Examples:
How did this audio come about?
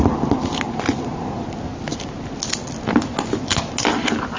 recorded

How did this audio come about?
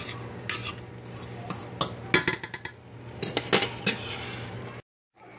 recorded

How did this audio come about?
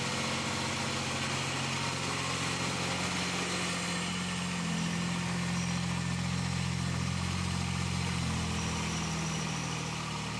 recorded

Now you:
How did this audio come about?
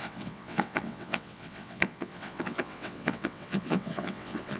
remade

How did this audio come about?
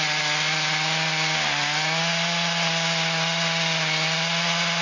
recorded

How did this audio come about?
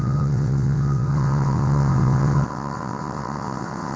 remade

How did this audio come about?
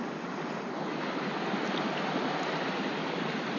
recorded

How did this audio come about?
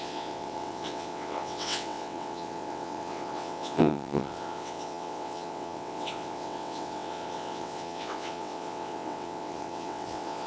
remade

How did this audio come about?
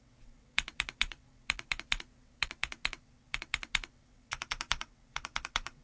remade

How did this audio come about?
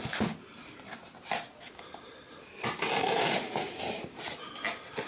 recorded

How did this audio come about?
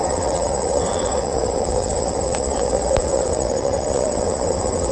remade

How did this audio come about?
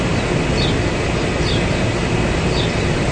recorded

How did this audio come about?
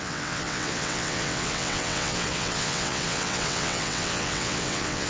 remade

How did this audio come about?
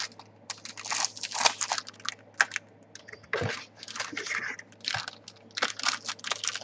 recorded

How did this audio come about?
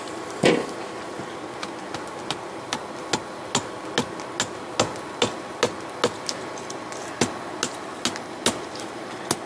recorded